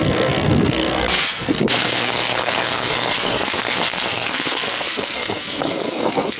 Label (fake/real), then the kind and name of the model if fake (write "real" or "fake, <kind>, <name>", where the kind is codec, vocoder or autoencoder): fake, codec, SNAC